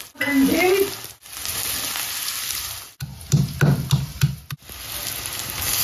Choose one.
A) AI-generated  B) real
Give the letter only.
B